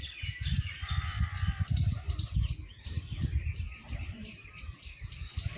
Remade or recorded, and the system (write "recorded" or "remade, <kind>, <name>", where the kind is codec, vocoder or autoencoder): recorded